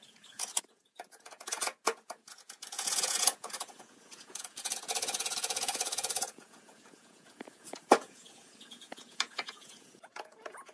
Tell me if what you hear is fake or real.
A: fake